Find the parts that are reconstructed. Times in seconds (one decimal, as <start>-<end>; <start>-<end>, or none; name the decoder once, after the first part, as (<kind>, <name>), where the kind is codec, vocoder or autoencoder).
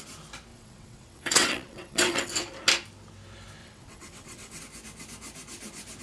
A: 0.5-2.3 (vocoder, WaveNeXt); 3.6-4.6